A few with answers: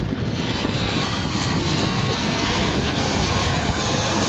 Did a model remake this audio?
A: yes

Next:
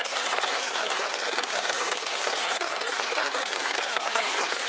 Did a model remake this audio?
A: yes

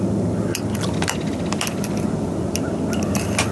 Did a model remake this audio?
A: no